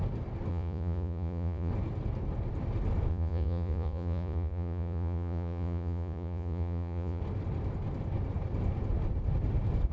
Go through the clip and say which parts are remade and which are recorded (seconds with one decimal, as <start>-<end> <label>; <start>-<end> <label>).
0.0-0.5 recorded; 0.5-1.7 remade; 1.7-3.1 recorded; 3.1-7.2 remade; 7.2-9.9 recorded